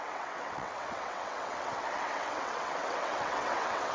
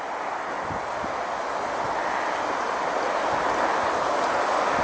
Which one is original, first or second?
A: second